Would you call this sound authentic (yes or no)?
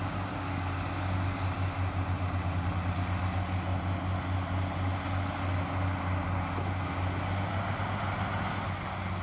yes